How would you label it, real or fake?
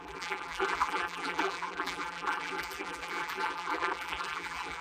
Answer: fake